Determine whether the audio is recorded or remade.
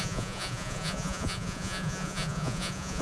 remade